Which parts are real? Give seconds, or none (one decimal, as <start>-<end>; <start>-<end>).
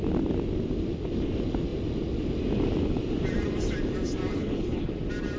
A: 0.0-4.3; 4.9-5.4